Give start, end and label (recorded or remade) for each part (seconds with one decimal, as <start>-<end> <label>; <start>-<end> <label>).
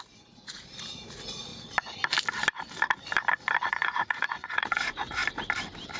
0.0-1.5 remade; 1.5-3.7 recorded; 3.7-5.2 remade; 5.2-6.0 recorded